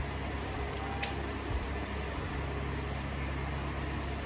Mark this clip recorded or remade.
recorded